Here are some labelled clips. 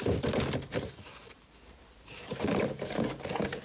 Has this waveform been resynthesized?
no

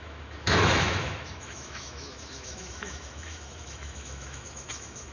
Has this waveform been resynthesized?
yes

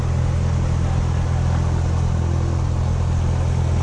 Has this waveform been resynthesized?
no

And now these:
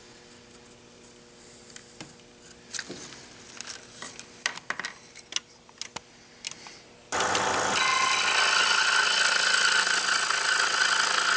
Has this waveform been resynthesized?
no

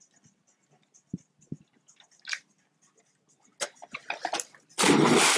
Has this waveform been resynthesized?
no